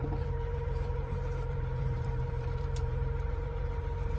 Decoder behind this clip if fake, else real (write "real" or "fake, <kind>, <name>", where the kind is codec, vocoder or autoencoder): fake, vocoder, BigVGAN v2